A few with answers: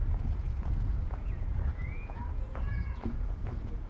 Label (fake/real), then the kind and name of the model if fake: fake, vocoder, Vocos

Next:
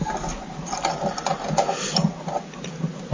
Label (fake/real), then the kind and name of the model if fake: real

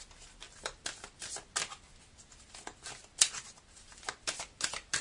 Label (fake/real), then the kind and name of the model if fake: real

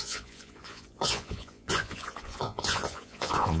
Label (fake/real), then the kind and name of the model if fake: fake, vocoder, Vocos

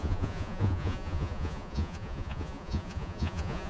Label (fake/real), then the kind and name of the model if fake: fake, vocoder, Vocos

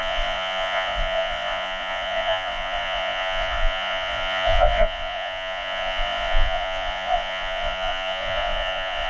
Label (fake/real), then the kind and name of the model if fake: fake, vocoder, Vocos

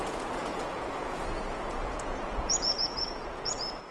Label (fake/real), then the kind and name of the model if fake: fake, vocoder, Vocos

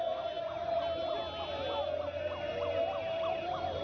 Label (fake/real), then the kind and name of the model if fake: real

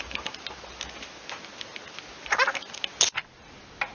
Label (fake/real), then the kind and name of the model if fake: real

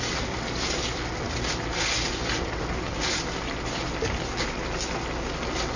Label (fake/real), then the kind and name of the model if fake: real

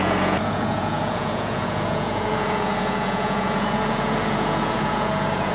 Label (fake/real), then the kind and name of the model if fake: fake, vocoder, Vocos